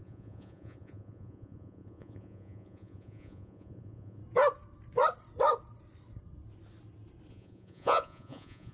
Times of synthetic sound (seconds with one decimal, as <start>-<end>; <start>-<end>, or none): 0.0-4.2; 7.3-8.7